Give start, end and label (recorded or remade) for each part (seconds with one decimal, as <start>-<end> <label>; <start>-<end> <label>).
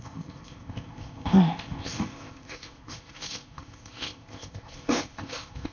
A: 0.0-5.7 remade